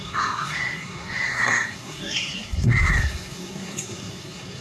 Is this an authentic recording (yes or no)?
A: no